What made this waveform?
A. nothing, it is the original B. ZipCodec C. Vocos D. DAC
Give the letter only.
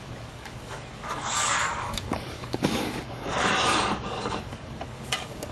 D